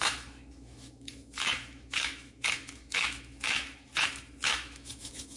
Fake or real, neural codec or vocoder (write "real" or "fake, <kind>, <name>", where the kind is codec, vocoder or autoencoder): fake, autoencoder, DAC-VAE